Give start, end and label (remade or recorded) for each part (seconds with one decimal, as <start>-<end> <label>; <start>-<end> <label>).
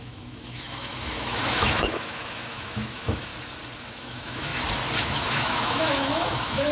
0.0-3.3 remade; 3.3-3.8 recorded; 3.8-4.5 remade; 4.5-5.0 recorded; 5.0-6.7 remade